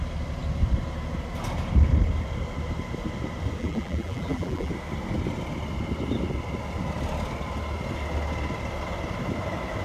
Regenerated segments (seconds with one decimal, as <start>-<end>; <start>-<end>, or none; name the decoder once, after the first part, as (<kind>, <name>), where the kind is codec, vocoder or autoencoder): 3.6-4.7 (vocoder, BigVGAN v2)